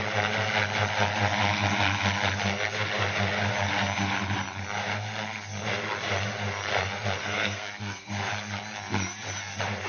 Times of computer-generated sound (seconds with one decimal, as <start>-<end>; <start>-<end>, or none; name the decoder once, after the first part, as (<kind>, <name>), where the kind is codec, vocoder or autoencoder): 7.2-8.1 (codec, SNAC)